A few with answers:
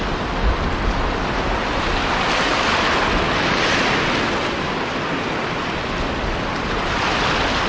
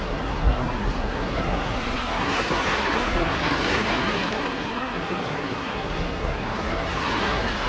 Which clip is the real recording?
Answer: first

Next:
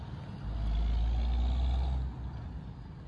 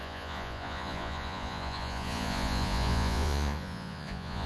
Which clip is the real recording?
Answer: first